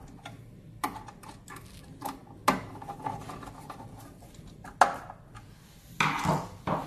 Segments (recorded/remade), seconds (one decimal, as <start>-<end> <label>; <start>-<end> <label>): 0.0-6.9 recorded